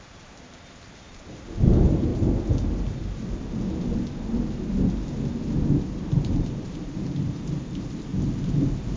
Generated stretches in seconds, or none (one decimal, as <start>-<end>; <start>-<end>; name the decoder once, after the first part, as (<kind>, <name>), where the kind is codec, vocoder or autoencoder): 0.0-2.1 (vocoder, BigVGAN v2); 5.8-8.1

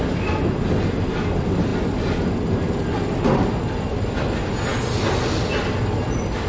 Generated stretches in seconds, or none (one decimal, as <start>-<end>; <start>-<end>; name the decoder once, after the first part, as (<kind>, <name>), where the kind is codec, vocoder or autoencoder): none

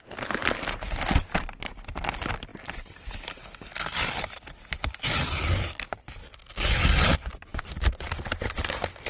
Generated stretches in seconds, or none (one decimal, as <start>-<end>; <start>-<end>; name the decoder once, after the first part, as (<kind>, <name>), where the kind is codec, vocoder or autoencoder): none

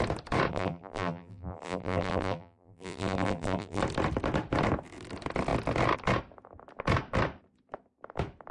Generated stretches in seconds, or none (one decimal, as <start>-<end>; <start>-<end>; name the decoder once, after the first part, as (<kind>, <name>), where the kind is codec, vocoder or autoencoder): 0.5-3.8 (vocoder, BigVGAN v2)

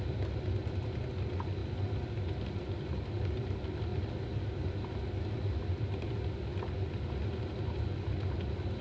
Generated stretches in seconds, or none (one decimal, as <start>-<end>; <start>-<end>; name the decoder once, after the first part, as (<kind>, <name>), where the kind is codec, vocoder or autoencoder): none

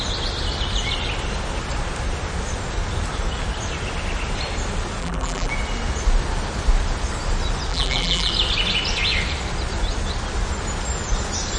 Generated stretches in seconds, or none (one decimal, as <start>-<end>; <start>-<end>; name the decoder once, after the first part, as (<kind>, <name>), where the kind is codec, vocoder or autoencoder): 5.0-5.5 (vocoder, BigVGAN v2); 7.7-8.3

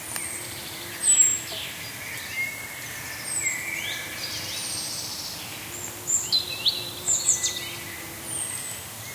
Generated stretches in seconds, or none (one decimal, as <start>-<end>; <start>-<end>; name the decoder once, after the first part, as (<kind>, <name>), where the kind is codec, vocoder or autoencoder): none

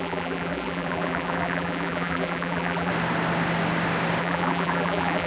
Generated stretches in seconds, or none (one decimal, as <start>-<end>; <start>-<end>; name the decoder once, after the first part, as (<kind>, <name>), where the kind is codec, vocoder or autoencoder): 0.0-2.9 (vocoder, BigVGAN v2); 4.2-5.3